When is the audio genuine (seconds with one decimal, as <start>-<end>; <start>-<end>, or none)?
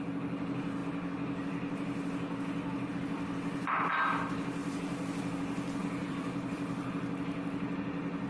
0.0-5.8; 7.0-8.3